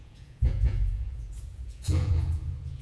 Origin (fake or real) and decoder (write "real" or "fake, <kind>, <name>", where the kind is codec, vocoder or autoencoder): fake, vocoder, Vocos